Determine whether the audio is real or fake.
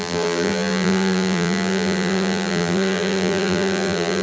fake